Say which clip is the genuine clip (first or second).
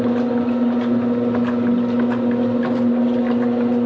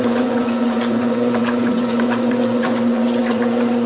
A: first